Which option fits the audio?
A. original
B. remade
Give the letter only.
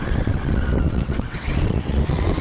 B